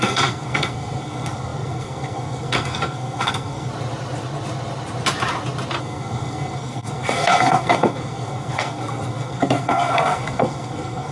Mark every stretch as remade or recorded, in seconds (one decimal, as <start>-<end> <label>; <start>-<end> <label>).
0.0-3.7 remade; 3.7-5.8 recorded; 5.8-11.1 remade